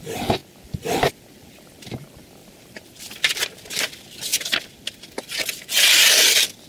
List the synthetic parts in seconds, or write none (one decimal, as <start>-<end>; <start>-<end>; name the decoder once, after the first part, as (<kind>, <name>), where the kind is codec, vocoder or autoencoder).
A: 2.4-3.7 (vocoder, BigVGAN v2)